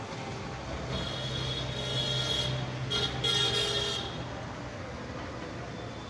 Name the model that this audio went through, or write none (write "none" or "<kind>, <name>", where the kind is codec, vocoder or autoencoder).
none